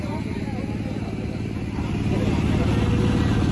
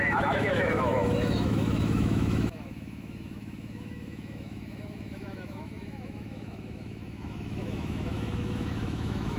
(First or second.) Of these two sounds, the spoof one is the second